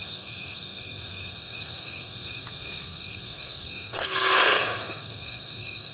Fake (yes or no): yes